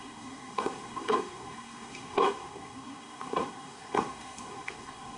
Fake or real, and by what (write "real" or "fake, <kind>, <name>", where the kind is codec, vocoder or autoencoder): fake, codec, SNAC